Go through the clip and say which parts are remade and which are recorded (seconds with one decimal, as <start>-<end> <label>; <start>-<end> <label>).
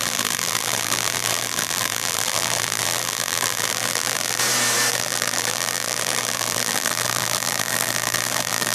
0.0-4.4 remade; 4.4-4.9 recorded; 4.9-8.7 remade